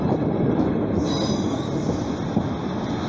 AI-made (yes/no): no